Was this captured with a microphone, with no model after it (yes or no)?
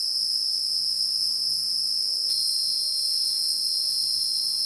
no